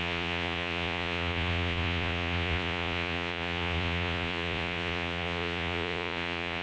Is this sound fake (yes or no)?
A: yes